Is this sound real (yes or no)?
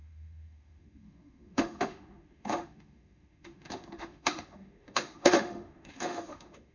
no